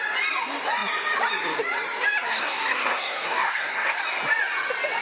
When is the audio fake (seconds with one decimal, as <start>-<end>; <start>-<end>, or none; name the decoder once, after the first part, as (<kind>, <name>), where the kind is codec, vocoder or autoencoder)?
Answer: 2.3-4.0 (codec, SNAC)